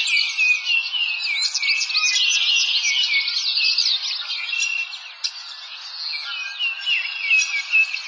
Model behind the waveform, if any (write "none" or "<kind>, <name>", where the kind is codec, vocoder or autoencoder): none